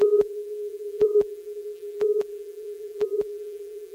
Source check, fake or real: fake